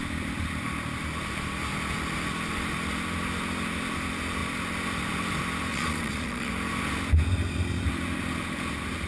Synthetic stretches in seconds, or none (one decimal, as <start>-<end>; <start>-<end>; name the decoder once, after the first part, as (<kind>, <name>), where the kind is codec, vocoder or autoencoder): 5.7-6.5 (vocoder, Vocos)